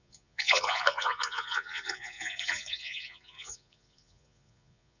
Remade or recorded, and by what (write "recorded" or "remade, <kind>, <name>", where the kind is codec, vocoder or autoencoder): remade, vocoder, Vocos